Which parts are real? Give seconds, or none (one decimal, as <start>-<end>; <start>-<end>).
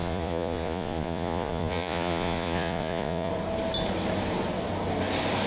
3.3-5.5